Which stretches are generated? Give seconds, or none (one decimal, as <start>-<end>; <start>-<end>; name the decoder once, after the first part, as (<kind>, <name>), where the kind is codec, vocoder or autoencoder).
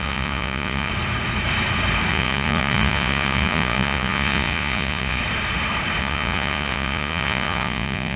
0.0-0.9 (vocoder, Vocos); 2.1-5.2; 6.0-8.2